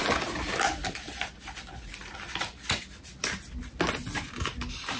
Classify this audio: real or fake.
real